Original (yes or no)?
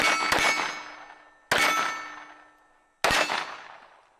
yes